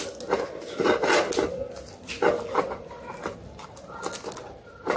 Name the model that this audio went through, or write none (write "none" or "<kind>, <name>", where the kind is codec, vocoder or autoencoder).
none